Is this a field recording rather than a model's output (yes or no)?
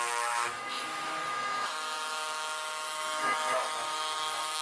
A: no